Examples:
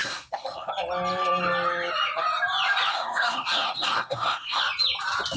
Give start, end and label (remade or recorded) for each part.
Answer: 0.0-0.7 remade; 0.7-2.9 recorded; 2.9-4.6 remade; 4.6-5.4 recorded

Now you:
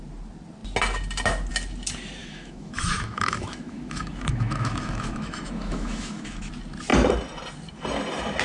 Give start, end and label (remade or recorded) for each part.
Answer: 0.0-2.2 recorded; 2.2-6.5 remade; 6.5-8.4 recorded

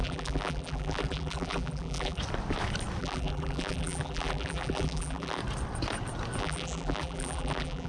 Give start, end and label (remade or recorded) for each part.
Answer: 0.0-2.2 remade; 2.2-3.0 recorded; 3.0-5.4 remade; 5.4-6.4 recorded; 6.4-7.9 remade